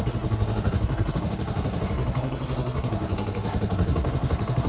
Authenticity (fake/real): fake